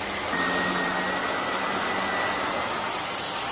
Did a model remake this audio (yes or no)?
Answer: no